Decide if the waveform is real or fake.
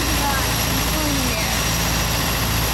real